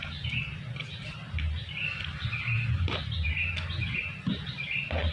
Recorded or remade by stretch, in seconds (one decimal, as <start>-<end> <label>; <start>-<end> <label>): 0.0-5.1 recorded